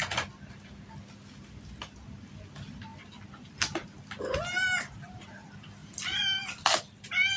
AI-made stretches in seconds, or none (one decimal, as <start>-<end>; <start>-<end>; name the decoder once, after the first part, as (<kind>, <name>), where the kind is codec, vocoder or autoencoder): none